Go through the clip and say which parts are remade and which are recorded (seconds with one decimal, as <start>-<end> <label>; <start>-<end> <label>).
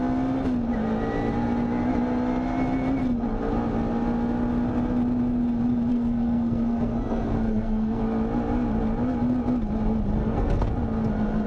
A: 0.0-5.9 recorded; 5.9-8.0 remade; 8.0-10.2 recorded; 10.2-10.7 remade; 10.7-11.5 recorded